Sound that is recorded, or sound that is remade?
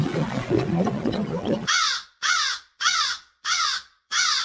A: remade